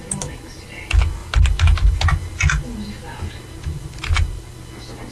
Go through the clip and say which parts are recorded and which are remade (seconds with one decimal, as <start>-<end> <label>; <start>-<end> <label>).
0.0-5.1 recorded